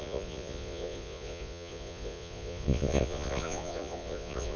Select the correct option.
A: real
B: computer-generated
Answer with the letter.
B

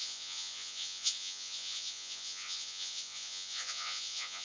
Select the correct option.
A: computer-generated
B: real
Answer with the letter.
A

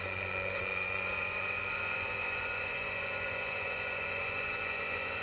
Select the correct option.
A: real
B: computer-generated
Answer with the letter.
B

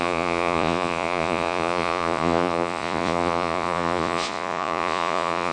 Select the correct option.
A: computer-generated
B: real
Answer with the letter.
A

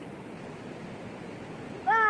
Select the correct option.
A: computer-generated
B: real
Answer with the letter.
B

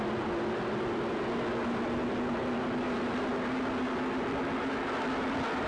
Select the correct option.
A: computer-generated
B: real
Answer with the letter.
B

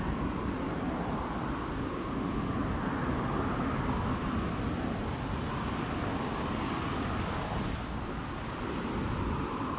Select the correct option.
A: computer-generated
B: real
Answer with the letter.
B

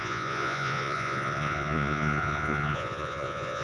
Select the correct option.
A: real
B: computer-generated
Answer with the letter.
B